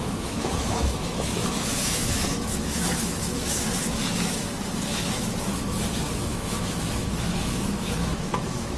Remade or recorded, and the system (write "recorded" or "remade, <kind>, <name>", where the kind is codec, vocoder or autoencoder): remade, autoencoder, DAC-VAE